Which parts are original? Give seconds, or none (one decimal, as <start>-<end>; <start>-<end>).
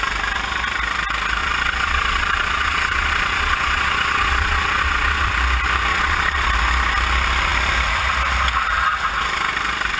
0.0-1.4; 5.3-5.9; 6.5-10.0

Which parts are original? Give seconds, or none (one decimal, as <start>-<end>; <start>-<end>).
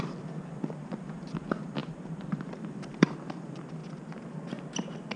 3.8-5.2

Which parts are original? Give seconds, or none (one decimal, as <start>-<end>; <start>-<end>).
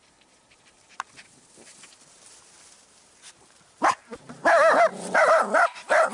none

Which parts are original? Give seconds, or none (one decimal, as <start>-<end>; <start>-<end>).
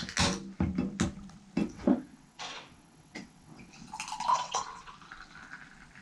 0.0-1.6; 3.7-4.3; 4.9-6.0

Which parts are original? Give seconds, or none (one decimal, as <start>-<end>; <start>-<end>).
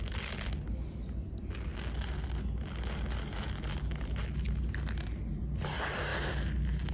0.0-6.9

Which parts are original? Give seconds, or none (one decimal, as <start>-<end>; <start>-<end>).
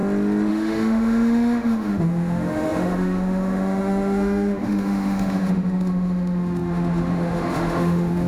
0.0-0.5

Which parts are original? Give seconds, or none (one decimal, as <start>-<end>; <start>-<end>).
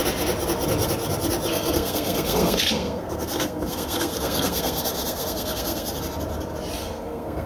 0.0-1.5; 6.0-6.8